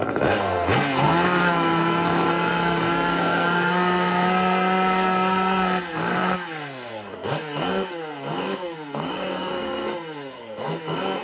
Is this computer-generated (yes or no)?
yes